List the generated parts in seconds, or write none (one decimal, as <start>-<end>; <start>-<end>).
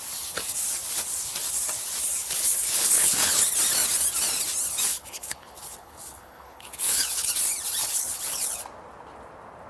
2.2-3.4; 4.9-7.3; 7.8-8.6